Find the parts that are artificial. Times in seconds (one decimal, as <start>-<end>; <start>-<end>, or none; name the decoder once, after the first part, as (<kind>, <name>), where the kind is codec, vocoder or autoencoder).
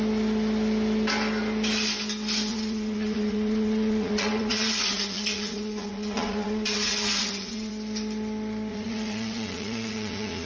2.5-7.7 (vocoder, Vocos); 8.7-10.5